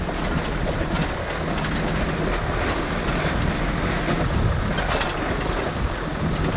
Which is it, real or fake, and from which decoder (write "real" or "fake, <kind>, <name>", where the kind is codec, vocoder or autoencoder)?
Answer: real